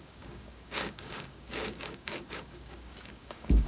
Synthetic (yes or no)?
yes